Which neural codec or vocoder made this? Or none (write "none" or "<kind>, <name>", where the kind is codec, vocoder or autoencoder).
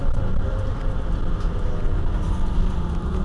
none